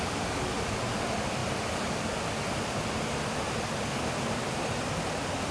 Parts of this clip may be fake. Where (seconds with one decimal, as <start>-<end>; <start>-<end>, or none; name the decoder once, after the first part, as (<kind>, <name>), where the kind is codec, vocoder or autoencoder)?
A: none